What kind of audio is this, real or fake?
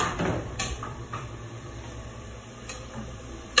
fake